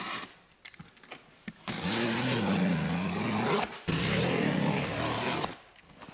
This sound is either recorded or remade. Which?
recorded